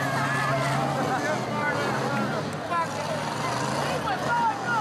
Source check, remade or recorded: recorded